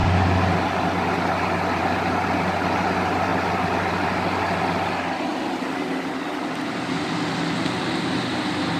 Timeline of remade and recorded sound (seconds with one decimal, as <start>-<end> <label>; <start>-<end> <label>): 0.0-8.8 recorded